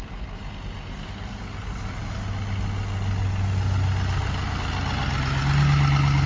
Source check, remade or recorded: recorded